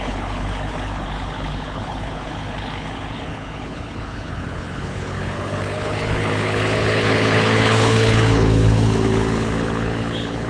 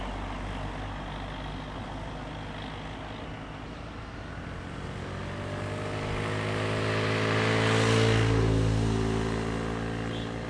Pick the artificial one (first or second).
first